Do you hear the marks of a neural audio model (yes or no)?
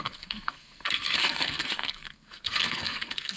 yes